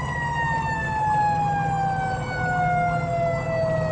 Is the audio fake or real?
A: real